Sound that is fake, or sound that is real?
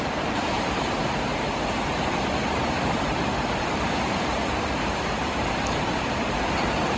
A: fake